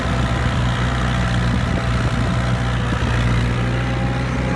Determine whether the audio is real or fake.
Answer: real